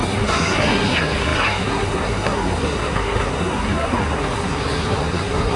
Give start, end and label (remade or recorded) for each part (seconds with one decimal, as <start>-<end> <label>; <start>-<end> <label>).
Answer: 0.0-5.6 remade